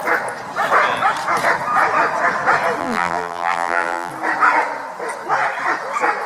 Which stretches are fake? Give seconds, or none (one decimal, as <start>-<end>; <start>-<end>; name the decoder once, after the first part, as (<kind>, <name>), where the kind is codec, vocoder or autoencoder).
2.8-4.1 (vocoder, BigVGAN v2)